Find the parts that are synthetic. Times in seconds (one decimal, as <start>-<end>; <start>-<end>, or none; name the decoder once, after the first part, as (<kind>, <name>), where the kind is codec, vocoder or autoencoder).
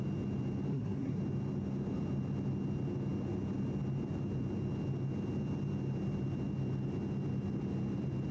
0.7-1.2 (codec, SNAC)